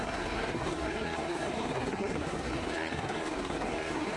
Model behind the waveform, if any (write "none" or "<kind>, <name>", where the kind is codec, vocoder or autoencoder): codec, SNAC